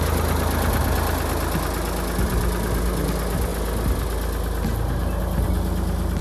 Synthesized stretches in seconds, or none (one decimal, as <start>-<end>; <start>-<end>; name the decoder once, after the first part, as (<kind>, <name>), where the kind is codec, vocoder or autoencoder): none